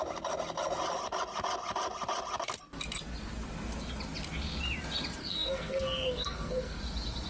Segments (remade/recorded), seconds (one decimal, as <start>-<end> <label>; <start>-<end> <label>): 0.0-5.2 recorded; 5.2-6.8 remade; 6.8-7.3 recorded